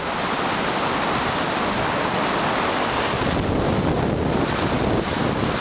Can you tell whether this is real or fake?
real